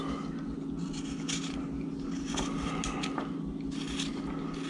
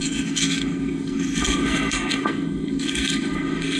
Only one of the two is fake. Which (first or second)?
second